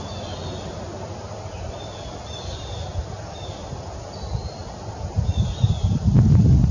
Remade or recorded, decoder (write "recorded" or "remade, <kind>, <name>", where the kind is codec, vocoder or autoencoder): recorded